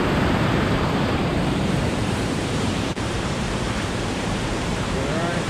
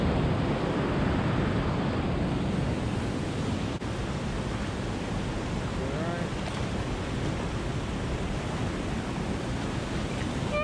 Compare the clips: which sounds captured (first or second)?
second